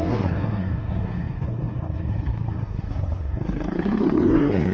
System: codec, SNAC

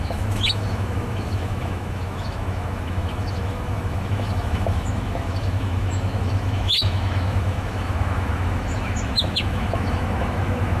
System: autoencoder, DAC-VAE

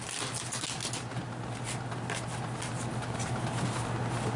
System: none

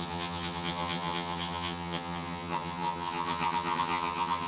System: vocoder, HiFi-GAN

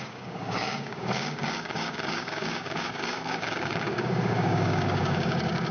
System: codec, DAC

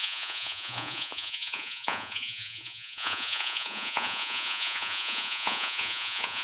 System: vocoder, Vocos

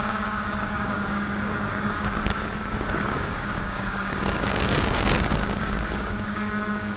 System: codec, DAC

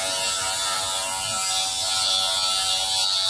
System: none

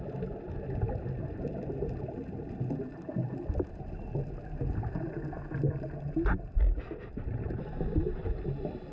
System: none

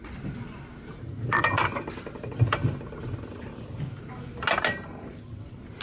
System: none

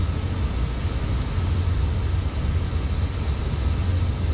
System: none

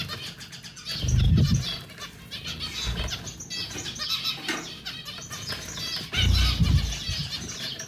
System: none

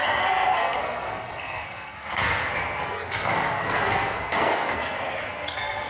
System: codec, SNAC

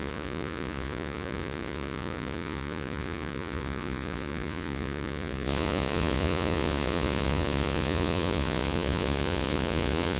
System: vocoder, Vocos